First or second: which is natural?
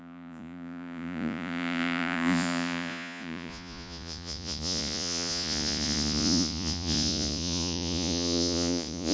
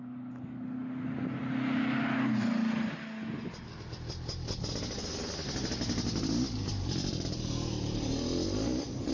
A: second